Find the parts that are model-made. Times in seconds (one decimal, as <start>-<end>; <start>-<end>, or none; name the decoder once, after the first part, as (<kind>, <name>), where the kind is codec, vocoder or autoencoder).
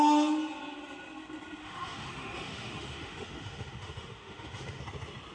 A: 1.6-4.8 (autoencoder, DAC-VAE)